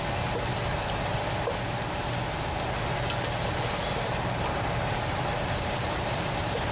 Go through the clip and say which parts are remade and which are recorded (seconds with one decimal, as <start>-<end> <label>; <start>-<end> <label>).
0.0-3.8 recorded; 3.8-6.7 remade